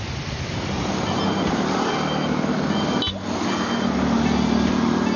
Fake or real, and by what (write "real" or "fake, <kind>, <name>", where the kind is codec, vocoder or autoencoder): real